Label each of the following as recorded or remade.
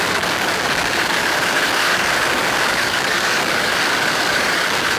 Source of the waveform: remade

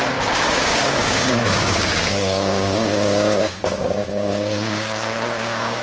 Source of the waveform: remade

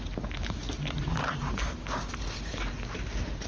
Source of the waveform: recorded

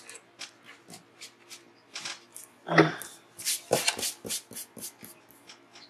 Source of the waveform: recorded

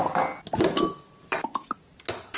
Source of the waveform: recorded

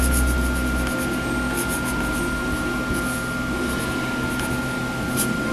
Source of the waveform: recorded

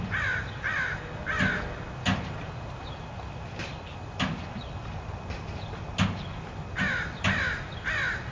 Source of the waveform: recorded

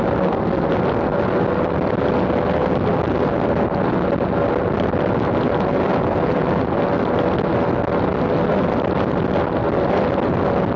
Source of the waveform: recorded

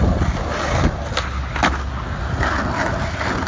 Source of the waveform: recorded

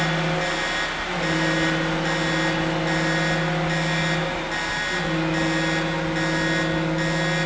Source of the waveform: recorded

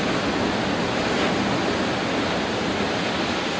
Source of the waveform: recorded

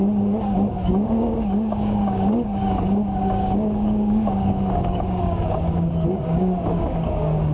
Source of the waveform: remade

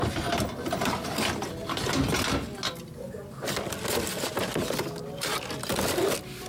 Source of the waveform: recorded